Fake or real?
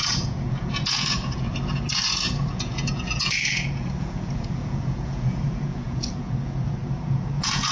fake